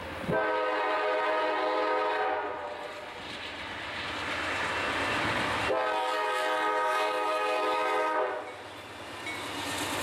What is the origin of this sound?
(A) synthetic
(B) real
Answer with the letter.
B